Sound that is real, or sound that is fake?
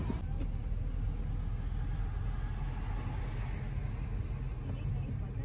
real